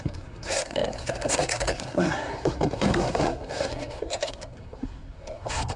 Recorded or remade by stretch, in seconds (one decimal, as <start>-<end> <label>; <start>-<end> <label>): 0.0-5.8 remade